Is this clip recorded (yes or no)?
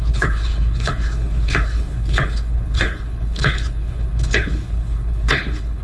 no